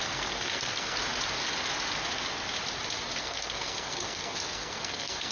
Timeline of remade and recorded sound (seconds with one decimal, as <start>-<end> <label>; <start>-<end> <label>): 0.0-1.0 remade; 1.0-3.2 recorded; 3.2-5.3 remade